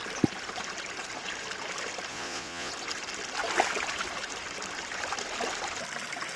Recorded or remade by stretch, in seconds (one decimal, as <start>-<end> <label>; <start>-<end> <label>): 0.0-2.1 recorded; 2.1-2.7 remade; 2.7-6.4 recorded